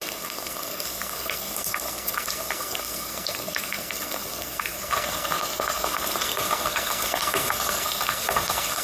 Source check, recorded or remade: remade